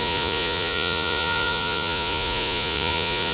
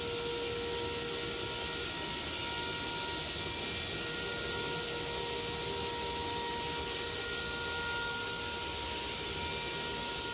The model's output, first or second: first